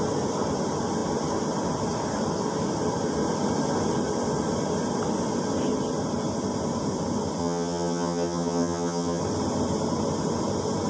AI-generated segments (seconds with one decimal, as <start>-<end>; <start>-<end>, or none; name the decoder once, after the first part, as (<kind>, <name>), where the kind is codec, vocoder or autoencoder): 7.4-9.2 (vocoder, HiFi-GAN)